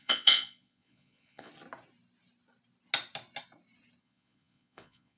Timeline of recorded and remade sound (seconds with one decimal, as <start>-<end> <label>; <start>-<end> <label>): 0.0-1.5 remade; 1.5-4.0 recorded; 4.0-5.2 remade